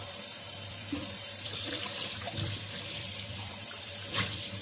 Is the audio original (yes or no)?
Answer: no